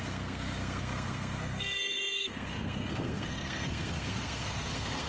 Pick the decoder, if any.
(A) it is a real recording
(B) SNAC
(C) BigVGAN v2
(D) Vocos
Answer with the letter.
B